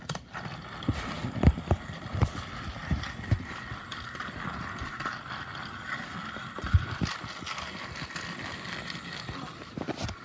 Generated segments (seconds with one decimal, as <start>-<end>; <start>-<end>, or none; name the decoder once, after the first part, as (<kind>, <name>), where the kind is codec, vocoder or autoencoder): none